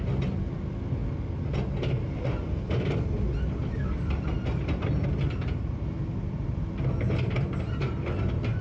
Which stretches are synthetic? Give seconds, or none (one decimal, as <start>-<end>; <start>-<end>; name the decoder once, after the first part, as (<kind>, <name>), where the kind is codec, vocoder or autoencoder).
none